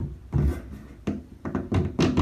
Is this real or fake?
real